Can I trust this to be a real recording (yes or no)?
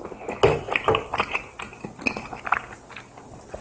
yes